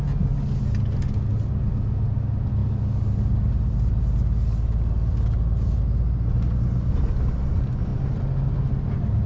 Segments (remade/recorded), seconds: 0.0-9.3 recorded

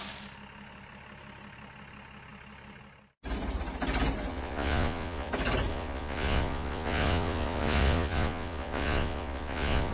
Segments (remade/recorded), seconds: 0.0-4.3 recorded; 4.3-5.3 remade; 5.3-5.7 recorded; 5.7-9.9 remade

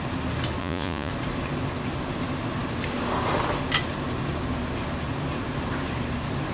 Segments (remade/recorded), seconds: 0.0-0.6 recorded; 0.6-1.1 remade; 1.1-6.5 recorded

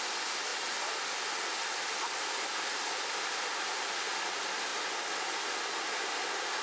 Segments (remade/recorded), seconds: 0.0-6.6 recorded

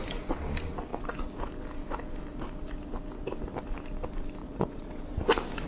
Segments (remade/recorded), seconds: 0.0-4.4 recorded; 4.4-5.0 remade; 5.0-5.7 recorded

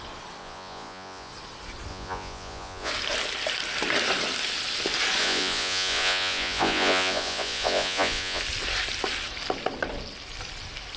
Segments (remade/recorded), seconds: 0.0-0.4 recorded; 0.4-1.3 remade; 1.3-1.9 recorded; 1.9-2.9 remade; 2.9-5.2 recorded; 5.2-8.4 remade; 8.4-11.0 recorded